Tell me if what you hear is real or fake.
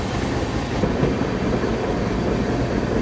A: real